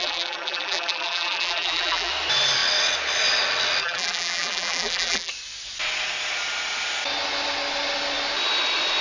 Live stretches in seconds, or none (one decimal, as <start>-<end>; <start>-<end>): 2.1-3.8; 5.3-9.0

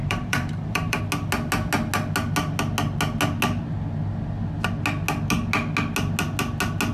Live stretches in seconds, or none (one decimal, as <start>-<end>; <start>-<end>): 1.0-6.9

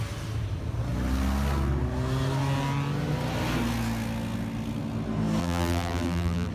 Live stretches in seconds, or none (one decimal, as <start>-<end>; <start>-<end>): 0.0-5.4

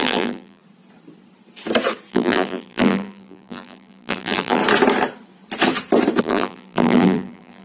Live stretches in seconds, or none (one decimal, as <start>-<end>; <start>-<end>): 0.6-2.1; 4.6-6.2

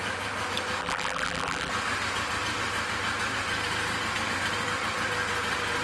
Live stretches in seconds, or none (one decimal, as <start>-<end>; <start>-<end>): 0.0-0.8; 1.7-5.8

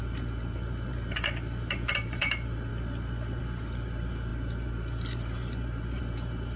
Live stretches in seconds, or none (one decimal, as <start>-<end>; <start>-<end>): 2.7-3.4